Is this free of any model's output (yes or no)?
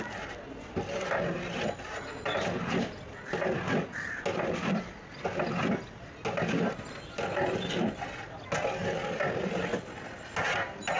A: yes